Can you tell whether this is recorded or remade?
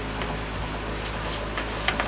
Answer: recorded